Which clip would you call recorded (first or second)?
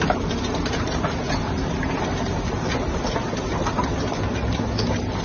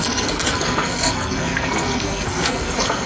first